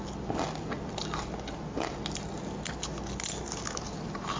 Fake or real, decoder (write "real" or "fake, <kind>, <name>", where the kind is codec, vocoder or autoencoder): real